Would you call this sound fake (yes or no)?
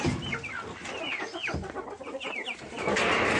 no